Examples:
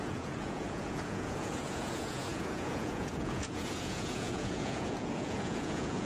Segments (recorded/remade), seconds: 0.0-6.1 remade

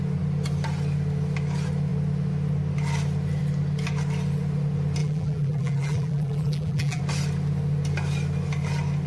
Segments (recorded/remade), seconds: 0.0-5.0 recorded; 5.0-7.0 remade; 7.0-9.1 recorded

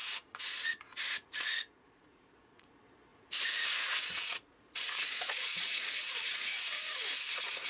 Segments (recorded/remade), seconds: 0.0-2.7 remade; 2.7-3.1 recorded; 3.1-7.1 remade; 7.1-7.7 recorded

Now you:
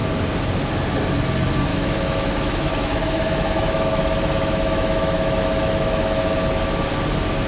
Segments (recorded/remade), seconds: 0.0-1.7 recorded; 1.7-6.2 remade; 6.2-7.5 recorded

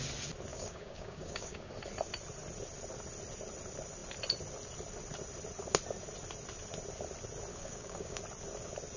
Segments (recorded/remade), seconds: 0.0-0.5 recorded; 0.5-1.7 remade; 1.7-7.5 recorded; 7.5-8.2 remade; 8.2-9.0 recorded

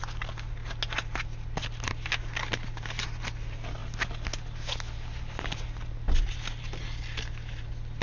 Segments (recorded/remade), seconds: 0.0-8.0 recorded